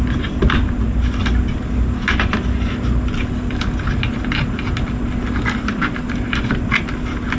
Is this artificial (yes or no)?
no